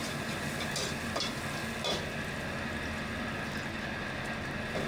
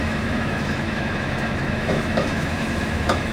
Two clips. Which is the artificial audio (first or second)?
second